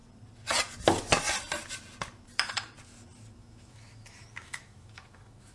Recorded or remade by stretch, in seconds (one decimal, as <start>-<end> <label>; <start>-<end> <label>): 0.0-3.3 recorded; 3.3-5.5 remade